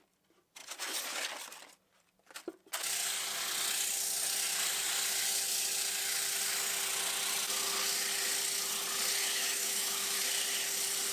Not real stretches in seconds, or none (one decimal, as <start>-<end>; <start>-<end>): 9.2-10.2